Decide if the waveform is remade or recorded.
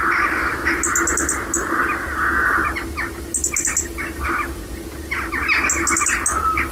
recorded